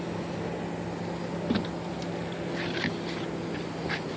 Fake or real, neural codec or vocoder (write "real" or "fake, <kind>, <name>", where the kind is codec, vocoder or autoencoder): real